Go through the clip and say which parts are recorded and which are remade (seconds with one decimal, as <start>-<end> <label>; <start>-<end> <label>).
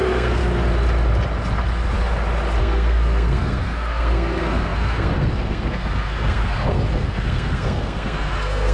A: 0.0-0.4 remade; 0.4-2.6 recorded; 2.6-8.7 remade